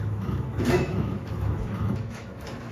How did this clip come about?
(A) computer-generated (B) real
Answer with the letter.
A